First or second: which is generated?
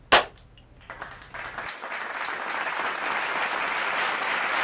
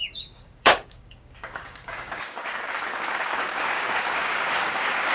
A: second